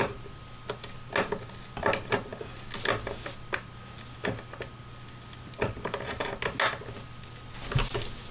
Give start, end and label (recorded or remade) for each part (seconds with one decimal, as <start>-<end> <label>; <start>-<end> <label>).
0.0-8.3 recorded